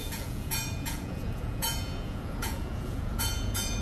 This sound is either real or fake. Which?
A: fake